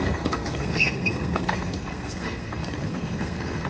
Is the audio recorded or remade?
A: remade